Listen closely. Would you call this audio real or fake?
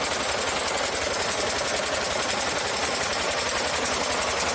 real